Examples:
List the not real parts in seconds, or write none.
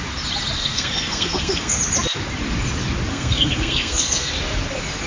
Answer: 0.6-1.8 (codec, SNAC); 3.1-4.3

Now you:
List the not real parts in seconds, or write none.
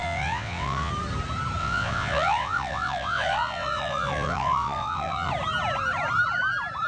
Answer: 0.0-0.9 (vocoder, WaveNeXt); 1.6-5.3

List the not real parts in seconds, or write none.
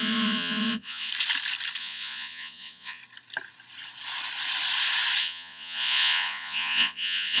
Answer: 0.0-1.1 (vocoder, Vocos); 1.8-3.0; 5.2-7.4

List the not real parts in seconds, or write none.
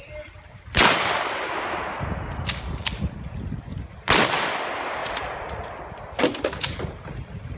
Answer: 5.0-5.7 (vocoder, Vocos)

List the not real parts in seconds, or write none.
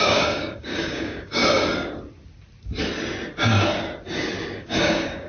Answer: 0.0-1.4 (codec, DAC); 4.6-5.3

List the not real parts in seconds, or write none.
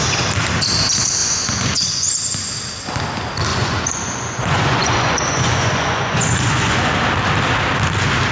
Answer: 1.2-2.6 (vocoder, Vocos); 3.5-6.9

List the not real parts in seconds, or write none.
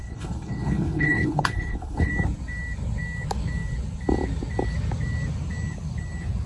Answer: 0.0-2.1 (codec, HILCodec)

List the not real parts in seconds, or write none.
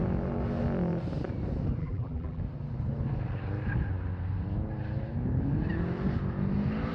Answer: 1.8-2.4 (vocoder, BigVGAN v2)